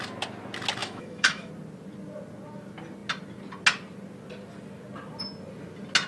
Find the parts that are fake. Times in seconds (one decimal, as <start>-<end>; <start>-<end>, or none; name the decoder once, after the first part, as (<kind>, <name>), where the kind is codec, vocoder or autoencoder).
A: 0.8-1.5 (autoencoder, DAC-VAE)